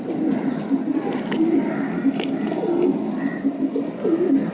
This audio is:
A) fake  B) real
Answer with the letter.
B